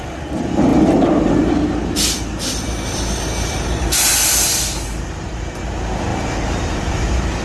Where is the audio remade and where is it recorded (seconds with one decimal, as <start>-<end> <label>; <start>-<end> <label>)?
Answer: 0.0-0.7 recorded; 0.7-1.3 remade; 1.3-6.1 recorded; 6.1-7.4 remade